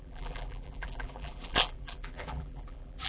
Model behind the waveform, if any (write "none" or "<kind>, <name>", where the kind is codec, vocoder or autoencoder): vocoder, BigVGAN v2